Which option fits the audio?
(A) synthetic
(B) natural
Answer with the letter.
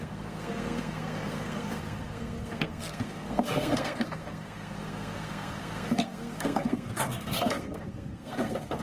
A